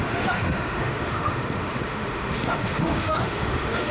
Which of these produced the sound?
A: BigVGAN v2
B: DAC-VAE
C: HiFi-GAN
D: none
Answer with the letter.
B